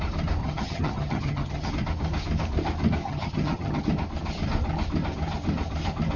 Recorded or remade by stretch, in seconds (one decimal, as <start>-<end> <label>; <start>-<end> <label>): 0.0-0.4 recorded; 0.4-1.7 remade; 1.7-3.0 recorded; 3.0-3.8 remade; 3.8-6.2 recorded